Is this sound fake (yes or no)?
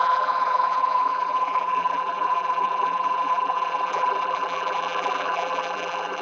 yes